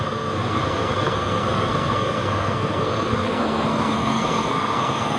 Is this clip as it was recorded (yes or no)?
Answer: no